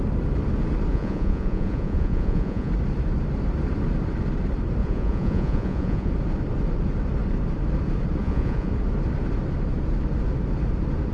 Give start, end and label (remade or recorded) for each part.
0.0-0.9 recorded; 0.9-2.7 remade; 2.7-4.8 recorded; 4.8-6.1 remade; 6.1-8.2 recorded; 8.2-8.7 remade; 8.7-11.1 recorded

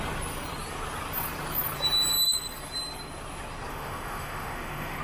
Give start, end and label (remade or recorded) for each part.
0.0-3.7 recorded; 3.7-5.0 remade

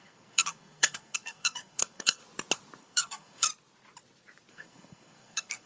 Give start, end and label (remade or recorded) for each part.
0.0-2.2 remade; 2.2-2.8 recorded; 2.8-3.5 remade; 3.5-4.5 recorded; 4.5-5.7 remade

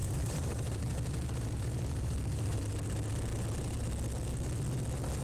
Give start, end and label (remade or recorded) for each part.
0.0-2.6 remade; 2.6-5.2 recorded

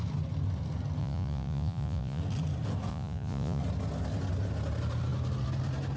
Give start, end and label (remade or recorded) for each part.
0.0-1.0 recorded; 1.0-2.2 remade; 2.2-2.9 recorded; 2.9-3.6 remade; 3.6-6.0 recorded

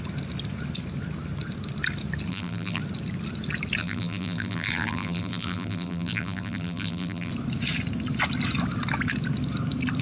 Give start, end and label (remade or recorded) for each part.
0.0-2.3 recorded; 2.3-2.8 remade; 2.8-3.8 recorded; 3.8-7.3 remade; 7.3-10.0 recorded

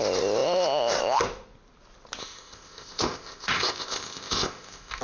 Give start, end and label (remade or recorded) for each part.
0.0-2.2 recorded; 2.2-5.0 remade

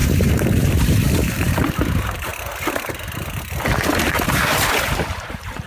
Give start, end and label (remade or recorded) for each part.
0.0-2.3 remade; 2.3-4.1 recorded; 4.1-5.7 remade